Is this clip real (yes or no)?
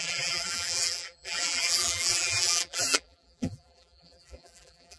no